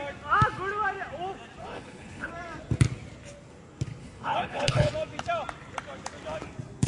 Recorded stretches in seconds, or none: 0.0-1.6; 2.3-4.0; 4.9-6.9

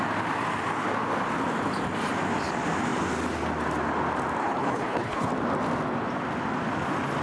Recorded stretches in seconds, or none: 0.0-4.4; 5.3-7.2

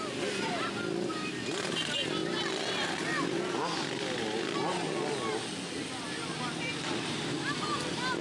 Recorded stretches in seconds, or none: 0.0-8.2

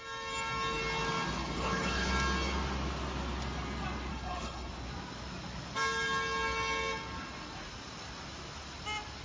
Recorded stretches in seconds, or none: 0.0-1.4; 2.1-4.1; 4.7-9.2

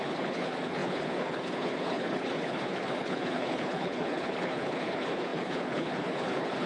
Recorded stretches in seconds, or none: none